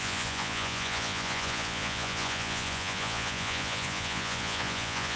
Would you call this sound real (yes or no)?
no